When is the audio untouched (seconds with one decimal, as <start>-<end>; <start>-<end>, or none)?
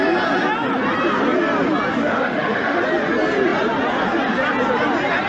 0.0-2.0; 2.8-5.3